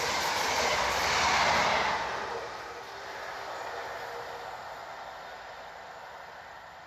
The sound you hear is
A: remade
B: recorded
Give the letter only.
B